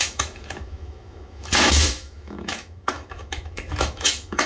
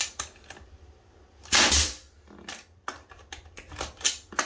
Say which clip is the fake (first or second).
first